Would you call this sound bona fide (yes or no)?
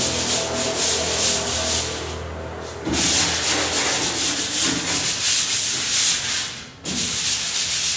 yes